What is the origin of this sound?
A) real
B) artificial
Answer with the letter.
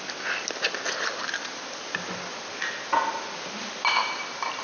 A